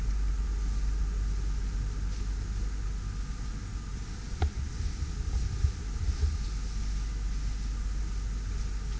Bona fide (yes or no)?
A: yes